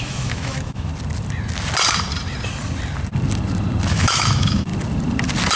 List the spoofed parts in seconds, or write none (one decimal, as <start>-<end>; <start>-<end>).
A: 0.0-0.9; 3.9-4.7